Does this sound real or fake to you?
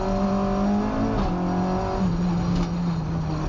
real